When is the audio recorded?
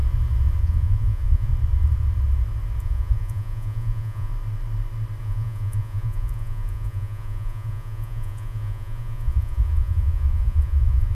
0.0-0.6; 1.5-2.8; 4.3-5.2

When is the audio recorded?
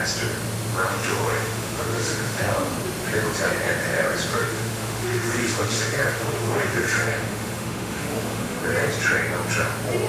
0.0-0.9; 2.4-4.3; 8.6-10.1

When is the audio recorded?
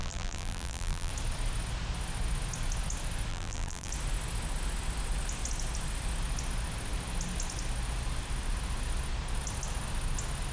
1.1-3.3; 3.9-10.5